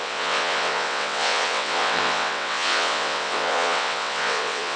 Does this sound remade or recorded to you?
remade